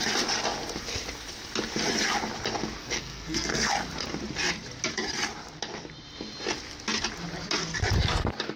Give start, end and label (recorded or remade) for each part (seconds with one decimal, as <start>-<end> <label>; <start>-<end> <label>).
0.0-2.8 recorded; 2.8-3.7 remade; 3.7-8.6 recorded